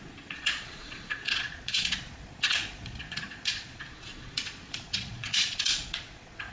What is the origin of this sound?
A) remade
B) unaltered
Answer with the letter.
A